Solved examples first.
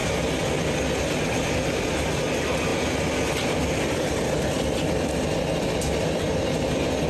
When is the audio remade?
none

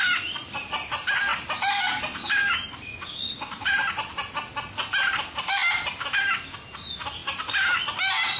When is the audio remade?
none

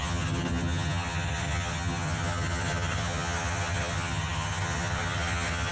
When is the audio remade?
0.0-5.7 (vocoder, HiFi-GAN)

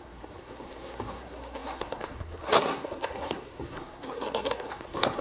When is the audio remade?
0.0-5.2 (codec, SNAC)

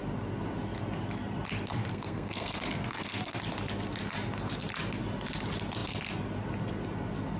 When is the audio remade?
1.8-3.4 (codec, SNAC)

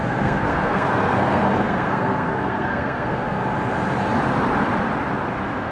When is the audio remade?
0.0-3.4 (codec, SNAC)

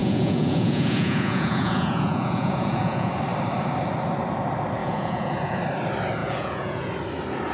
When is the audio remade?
0.0-3.1 (vocoder, Vocos); 4.8-5.6; 6.2-6.9

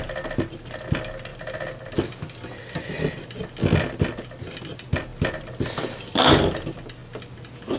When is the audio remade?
none